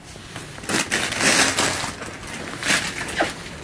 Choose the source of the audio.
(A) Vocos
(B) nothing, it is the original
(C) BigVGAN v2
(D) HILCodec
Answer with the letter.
B